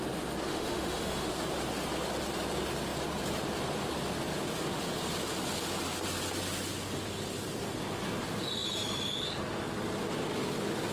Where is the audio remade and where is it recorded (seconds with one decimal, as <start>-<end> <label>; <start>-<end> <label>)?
0.0-0.5 recorded; 0.5-1.3 remade; 1.3-10.9 recorded